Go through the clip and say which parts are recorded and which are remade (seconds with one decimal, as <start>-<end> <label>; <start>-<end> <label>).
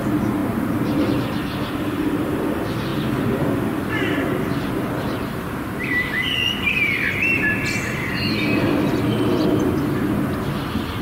0.0-11.0 recorded